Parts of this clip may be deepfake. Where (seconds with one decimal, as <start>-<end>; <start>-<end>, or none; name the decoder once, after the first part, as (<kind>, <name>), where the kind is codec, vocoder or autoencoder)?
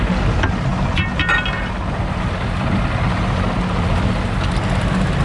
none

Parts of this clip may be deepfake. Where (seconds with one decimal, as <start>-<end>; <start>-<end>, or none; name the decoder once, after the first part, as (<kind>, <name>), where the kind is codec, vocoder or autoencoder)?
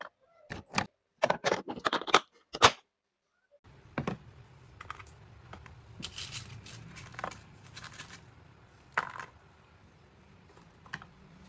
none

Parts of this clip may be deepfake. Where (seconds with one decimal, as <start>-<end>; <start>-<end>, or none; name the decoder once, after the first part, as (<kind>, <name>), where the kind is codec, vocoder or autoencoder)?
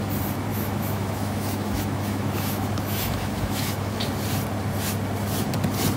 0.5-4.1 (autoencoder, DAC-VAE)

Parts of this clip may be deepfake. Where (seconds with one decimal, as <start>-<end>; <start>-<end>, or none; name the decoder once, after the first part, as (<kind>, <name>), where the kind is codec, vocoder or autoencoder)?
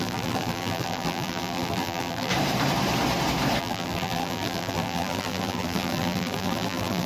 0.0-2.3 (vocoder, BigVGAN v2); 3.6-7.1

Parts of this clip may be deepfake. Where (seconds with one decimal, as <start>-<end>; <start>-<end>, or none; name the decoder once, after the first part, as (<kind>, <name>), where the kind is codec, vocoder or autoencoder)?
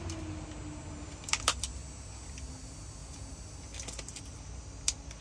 none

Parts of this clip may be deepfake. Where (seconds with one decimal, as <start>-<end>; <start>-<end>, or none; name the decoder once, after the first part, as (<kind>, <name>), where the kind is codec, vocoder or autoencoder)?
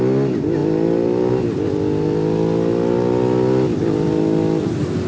0.6-1.3 (vocoder, BigVGAN v2)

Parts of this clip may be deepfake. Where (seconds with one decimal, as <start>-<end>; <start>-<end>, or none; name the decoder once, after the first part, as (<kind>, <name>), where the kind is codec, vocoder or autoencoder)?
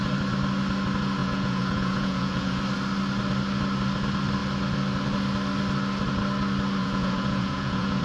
1.2-2.6 (vocoder, Vocos); 6.8-8.0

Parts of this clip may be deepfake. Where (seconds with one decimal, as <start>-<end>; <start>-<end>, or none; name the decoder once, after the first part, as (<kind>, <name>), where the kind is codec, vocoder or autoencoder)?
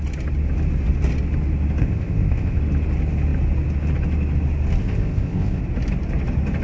1.8-2.6 (codec, ZipCodec); 4.8-5.6